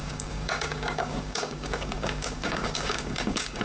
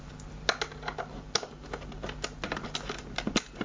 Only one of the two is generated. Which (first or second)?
first